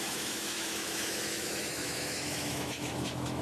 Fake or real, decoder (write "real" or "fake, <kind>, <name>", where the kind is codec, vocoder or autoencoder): fake, autoencoder, DAC-VAE